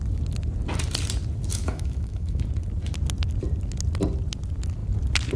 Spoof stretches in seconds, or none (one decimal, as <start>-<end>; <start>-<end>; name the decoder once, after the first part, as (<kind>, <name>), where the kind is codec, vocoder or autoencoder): 1.5-2.4 (autoencoder, DAC-VAE)